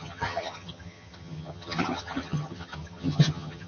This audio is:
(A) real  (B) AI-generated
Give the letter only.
B